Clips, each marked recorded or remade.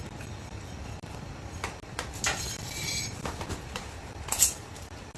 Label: recorded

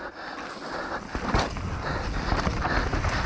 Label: recorded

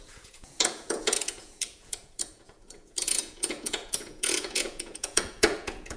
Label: remade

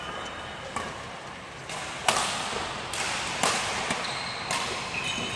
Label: recorded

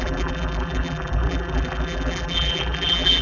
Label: remade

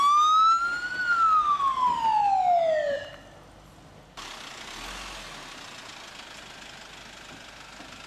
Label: recorded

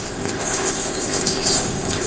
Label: remade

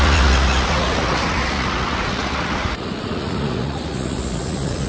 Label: remade